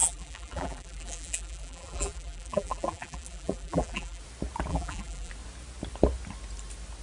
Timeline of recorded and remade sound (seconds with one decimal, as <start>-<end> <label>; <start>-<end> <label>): 0.0-4.2 remade; 4.2-4.7 recorded; 4.7-5.3 remade; 5.3-7.0 recorded